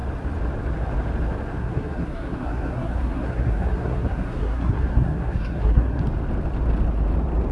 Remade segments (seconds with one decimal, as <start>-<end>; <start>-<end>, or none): 1.6-6.0

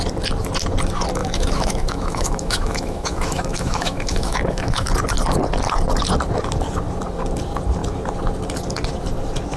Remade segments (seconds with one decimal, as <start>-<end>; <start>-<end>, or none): 1.2-4.9

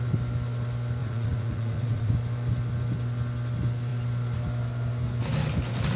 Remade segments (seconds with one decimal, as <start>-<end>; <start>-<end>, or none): 1.0-2.1

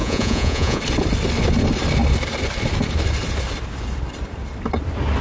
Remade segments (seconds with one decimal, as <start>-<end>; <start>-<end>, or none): 0.0-0.8

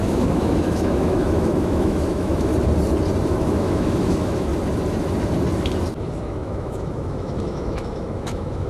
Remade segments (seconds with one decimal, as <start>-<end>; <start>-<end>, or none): 0.0-2.5; 3.3-4.5; 6.0-8.7

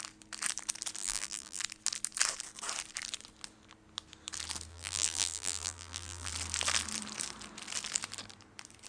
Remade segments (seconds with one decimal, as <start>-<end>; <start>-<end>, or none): 1.0-1.6; 4.7-6.3